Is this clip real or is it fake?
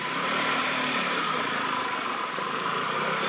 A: fake